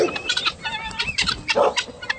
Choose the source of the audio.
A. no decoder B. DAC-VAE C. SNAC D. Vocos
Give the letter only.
A